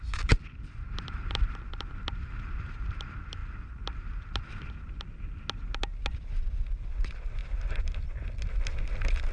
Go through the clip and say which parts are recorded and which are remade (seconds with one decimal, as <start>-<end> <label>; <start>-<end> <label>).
0.0-9.3 recorded